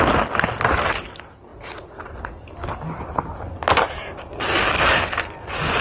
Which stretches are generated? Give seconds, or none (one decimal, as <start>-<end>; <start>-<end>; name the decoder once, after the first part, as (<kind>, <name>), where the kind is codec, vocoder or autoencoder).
none